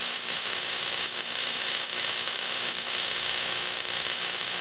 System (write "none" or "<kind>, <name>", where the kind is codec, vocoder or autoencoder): autoencoder, DAC-VAE